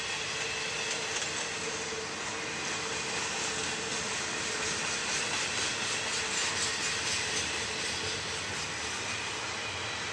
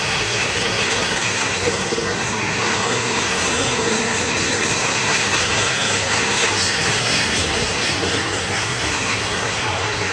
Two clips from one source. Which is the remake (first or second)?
second